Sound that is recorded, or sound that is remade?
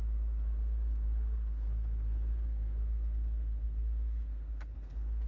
remade